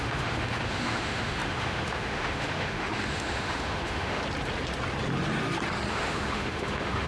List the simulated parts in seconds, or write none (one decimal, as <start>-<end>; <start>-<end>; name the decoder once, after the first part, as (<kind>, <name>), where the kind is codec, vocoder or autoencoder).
0.0-4.2 (autoencoder, DAC-VAE); 5.9-7.1